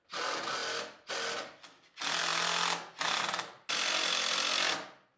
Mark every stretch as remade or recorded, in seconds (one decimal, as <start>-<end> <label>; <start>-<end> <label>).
0.0-5.2 recorded